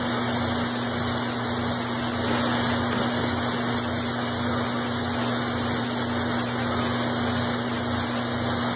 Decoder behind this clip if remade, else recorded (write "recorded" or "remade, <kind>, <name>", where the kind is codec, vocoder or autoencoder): recorded